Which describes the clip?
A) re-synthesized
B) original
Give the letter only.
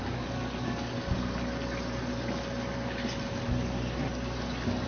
B